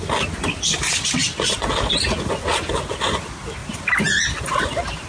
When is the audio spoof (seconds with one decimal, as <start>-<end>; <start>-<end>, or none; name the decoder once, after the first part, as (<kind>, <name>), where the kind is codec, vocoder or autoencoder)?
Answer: none